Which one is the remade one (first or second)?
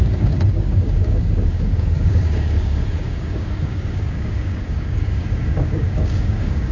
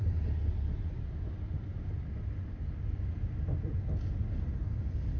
first